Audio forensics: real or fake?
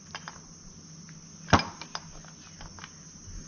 real